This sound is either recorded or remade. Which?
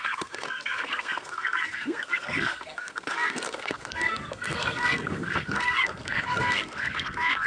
remade